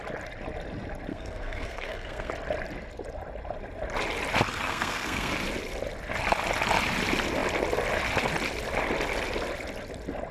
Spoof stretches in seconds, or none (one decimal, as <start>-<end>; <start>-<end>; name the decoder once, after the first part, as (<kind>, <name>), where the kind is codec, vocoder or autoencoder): 1.1-2.3 (codec, SNAC); 4.5-5.3